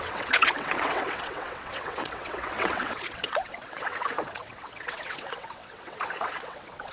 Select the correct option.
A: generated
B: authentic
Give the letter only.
A